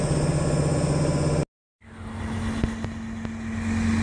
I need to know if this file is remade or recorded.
recorded